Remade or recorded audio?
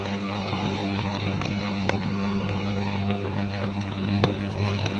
remade